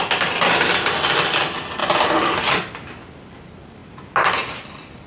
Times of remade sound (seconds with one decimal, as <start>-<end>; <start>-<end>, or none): 1.8-2.4